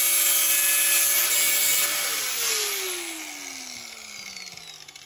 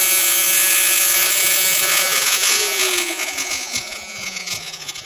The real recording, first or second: first